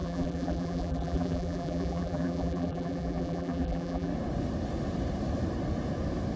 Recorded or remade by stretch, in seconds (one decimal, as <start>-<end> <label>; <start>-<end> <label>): 0.0-4.1 remade; 4.1-6.4 recorded